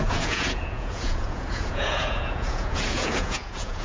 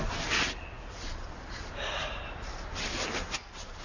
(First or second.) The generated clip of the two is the first